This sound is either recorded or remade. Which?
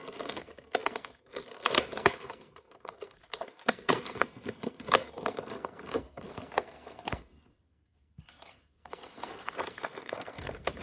remade